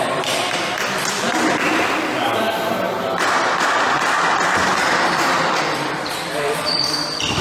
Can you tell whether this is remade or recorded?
remade